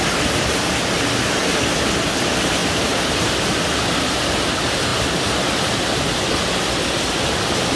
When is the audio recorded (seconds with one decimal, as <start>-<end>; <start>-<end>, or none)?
0.0-2.6; 3.4-7.8